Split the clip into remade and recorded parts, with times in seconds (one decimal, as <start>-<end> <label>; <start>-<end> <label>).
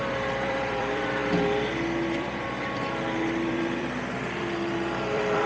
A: 0.0-5.5 remade